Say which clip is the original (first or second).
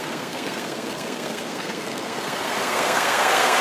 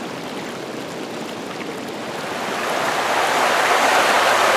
second